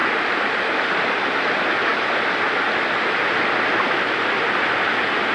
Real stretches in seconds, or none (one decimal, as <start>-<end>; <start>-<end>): 0.0-5.3